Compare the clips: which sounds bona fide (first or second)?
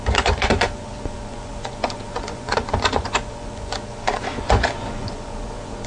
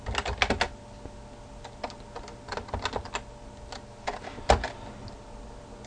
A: second